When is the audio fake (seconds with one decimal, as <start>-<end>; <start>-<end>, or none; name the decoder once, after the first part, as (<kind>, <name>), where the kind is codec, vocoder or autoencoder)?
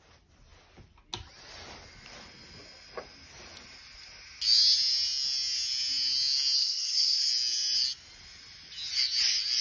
6.6-7.3 (codec, HILCodec)